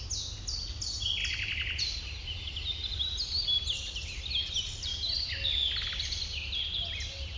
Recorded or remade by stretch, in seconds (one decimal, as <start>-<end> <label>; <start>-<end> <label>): 0.0-7.4 recorded